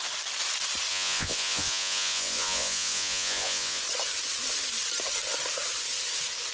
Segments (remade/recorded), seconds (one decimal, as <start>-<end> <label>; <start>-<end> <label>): 0.0-0.9 recorded; 0.9-3.8 remade; 3.8-6.5 recorded